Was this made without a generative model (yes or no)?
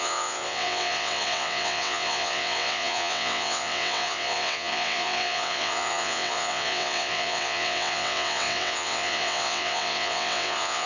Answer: no